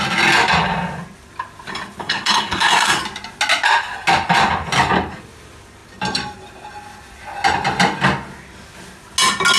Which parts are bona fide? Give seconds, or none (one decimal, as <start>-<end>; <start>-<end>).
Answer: 0.0-2.0; 3.0-9.6